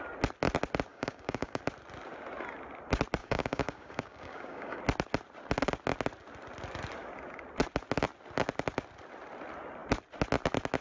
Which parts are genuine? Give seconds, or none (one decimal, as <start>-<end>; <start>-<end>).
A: 0.0-0.9; 1.6-3.2; 4.8-10.8